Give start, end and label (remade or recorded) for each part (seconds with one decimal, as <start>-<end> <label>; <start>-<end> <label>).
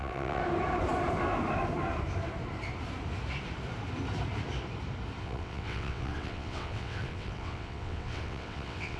0.0-0.4 remade; 0.4-5.2 recorded; 5.2-9.0 remade